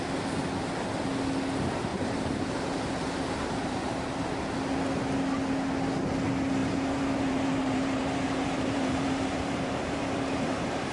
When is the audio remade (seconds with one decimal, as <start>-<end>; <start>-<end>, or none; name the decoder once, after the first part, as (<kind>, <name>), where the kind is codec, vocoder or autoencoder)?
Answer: 1.9-4.0 (vocoder, BigVGAN v2); 6.6-10.9